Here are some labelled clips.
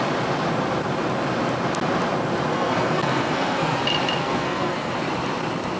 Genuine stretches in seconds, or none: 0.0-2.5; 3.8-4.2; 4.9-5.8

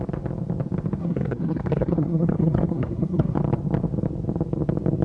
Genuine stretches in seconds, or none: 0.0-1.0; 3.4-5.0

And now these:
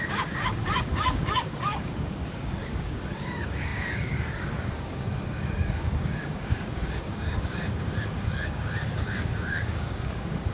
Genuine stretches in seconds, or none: none

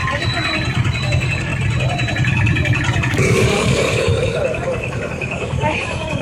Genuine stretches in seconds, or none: 0.0-1.0; 1.5-3.1

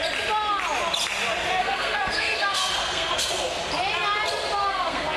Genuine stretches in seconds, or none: 0.0-1.6; 3.6-4.6

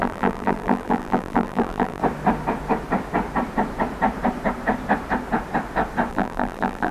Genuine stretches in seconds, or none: 2.0-6.1